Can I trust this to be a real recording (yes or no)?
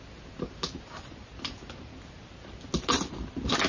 yes